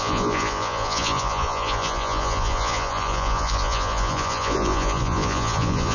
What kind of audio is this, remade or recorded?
remade